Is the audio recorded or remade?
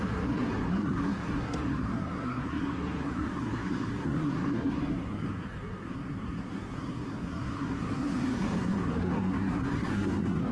remade